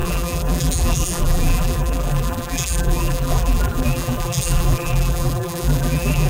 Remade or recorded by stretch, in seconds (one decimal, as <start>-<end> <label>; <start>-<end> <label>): 0.0-6.3 remade